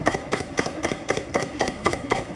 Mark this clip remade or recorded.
remade